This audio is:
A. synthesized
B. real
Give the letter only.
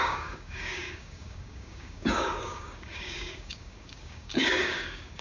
A